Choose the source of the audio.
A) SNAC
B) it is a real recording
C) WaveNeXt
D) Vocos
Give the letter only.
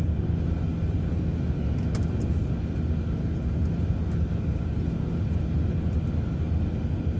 B